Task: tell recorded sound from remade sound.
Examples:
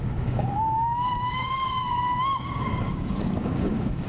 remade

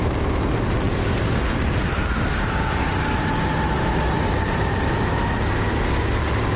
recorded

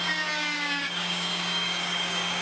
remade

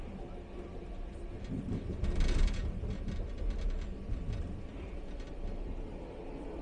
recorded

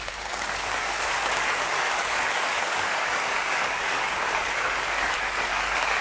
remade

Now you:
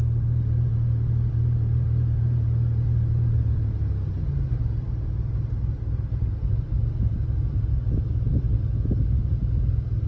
recorded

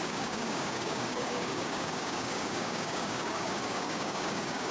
remade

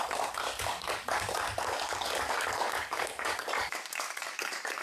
remade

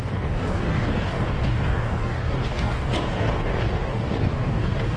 remade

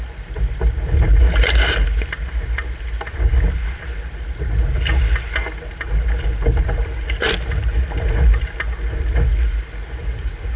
recorded